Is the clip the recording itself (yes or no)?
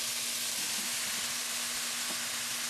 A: yes